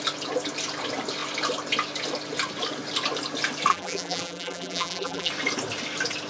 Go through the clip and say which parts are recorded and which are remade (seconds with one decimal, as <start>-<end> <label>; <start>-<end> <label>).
0.0-3.7 recorded; 3.7-5.3 remade; 5.3-6.3 recorded